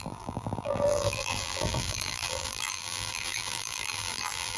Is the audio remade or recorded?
remade